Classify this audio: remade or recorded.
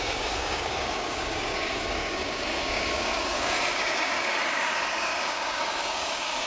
remade